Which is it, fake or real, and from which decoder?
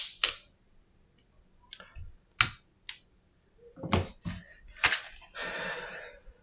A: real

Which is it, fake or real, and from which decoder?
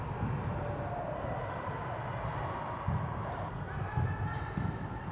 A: real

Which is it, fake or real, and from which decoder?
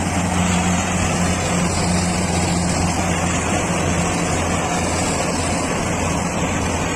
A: real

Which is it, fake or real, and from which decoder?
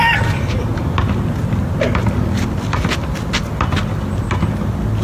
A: real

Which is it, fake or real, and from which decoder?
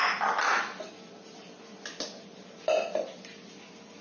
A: real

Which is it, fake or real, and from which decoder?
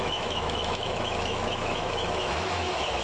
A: fake, autoencoder, DAC-VAE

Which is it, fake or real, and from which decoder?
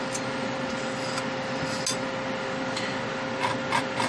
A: real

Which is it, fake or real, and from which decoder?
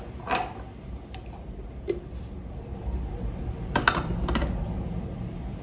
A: real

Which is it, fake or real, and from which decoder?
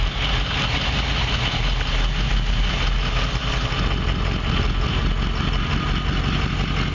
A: real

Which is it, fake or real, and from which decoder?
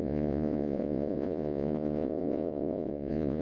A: fake, vocoder, Vocos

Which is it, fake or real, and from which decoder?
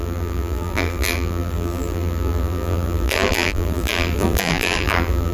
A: fake, vocoder, BigVGAN v2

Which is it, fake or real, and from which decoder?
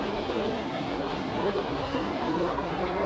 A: fake, codec, SNAC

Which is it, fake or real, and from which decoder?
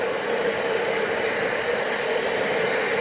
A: real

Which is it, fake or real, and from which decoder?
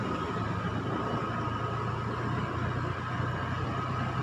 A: real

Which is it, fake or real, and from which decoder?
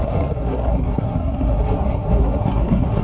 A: fake, codec, SNAC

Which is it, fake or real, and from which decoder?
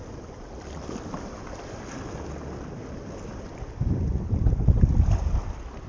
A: real